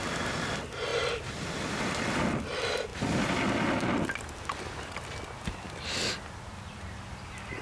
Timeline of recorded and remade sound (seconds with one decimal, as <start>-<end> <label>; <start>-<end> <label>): 0.0-0.9 recorded; 0.9-2.2 remade; 2.2-7.6 recorded